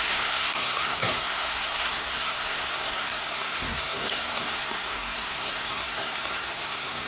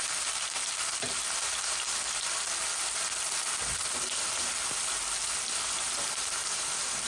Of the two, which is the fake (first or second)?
first